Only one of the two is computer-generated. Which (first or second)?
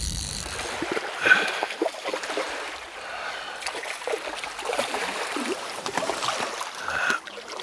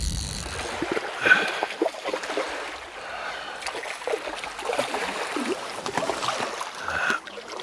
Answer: first